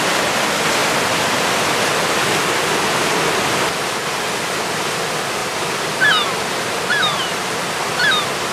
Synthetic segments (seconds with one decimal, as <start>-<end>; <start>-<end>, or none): 5.4-7.6